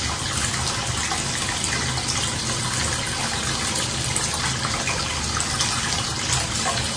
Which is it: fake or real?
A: real